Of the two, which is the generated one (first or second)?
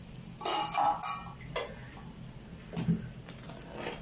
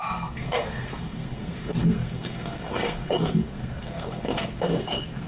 second